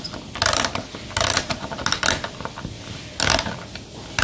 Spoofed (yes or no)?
no